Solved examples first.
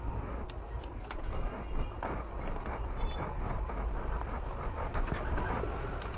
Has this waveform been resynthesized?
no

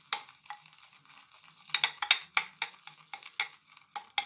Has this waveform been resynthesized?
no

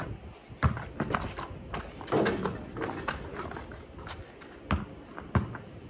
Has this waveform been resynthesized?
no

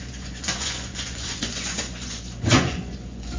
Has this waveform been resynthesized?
yes